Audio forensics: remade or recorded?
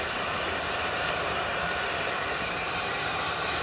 remade